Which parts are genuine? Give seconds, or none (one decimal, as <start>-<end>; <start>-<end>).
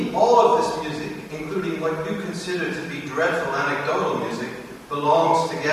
0.5-1.3